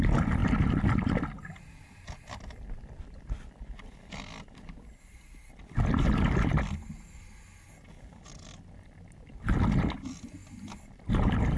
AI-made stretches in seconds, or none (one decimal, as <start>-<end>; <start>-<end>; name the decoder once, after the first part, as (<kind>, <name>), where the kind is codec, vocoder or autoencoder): none